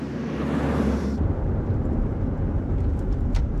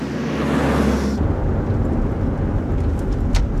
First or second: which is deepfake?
first